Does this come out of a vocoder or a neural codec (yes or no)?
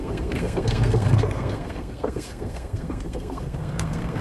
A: yes